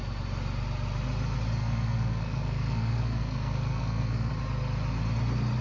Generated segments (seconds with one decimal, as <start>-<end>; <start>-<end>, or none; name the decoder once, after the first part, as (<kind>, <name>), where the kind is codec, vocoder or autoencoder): 1.6-4.3 (codec, SNAC)